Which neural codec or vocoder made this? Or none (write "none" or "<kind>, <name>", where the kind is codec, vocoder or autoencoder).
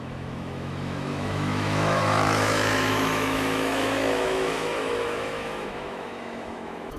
autoencoder, DAC-VAE